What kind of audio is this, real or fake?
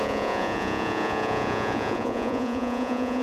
fake